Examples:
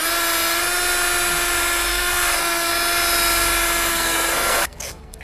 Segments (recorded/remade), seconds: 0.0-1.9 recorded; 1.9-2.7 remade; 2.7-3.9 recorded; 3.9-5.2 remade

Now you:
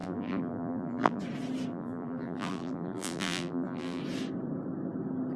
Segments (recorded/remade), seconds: 0.0-1.2 remade; 1.2-1.7 recorded; 1.7-4.0 remade; 4.0-5.4 recorded

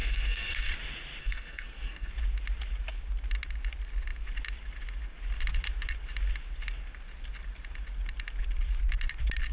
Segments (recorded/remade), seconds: 0.0-0.7 remade; 0.7-1.2 recorded; 1.2-2.1 remade; 2.1-9.5 recorded